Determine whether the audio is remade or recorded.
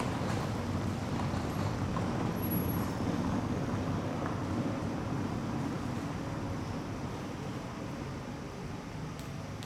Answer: recorded